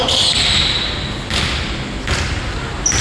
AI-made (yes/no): no